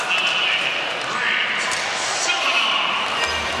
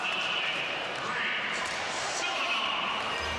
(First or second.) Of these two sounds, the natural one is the first